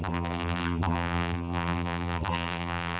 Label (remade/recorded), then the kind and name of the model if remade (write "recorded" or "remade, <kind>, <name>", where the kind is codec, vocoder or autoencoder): remade, vocoder, BigVGAN v2